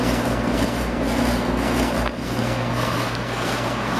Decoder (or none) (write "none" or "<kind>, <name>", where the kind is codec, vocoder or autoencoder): codec, SNAC